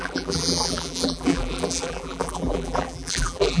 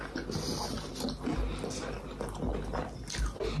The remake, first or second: first